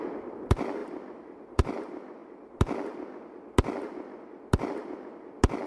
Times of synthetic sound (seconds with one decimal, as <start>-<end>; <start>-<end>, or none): 0.8-1.8